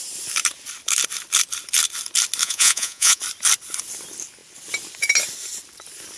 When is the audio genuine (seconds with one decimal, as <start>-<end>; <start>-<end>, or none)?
0.0-2.4; 3.2-6.2